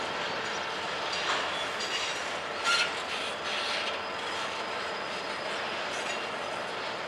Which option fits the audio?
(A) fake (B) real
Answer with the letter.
B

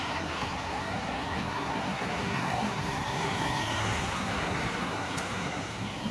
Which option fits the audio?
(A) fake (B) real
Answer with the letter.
A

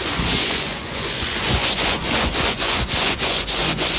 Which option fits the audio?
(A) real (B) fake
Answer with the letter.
B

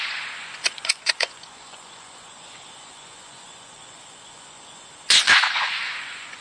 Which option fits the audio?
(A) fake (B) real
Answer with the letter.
A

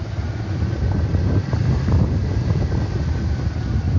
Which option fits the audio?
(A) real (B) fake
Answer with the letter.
A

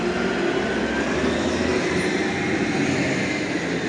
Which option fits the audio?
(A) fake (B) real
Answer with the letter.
B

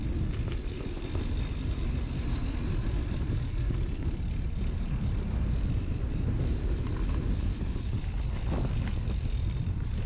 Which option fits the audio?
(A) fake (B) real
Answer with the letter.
B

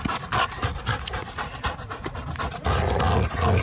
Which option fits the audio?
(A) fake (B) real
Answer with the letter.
B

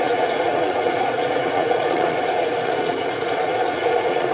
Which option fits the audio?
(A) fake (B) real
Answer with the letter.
A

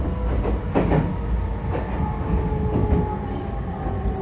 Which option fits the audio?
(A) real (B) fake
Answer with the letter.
A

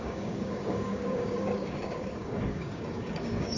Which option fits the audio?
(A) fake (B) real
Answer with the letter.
A